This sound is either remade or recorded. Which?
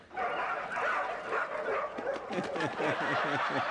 recorded